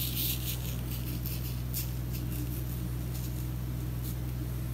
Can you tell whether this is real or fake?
real